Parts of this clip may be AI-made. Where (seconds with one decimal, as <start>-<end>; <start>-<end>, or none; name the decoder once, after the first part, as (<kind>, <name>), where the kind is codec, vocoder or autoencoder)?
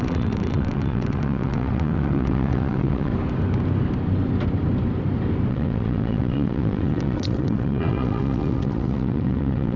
0.0-3.1 (vocoder, WaveNeXt); 5.5-9.8